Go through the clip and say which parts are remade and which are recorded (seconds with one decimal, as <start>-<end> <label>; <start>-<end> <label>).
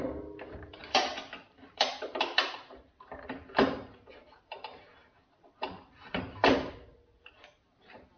0.0-8.2 remade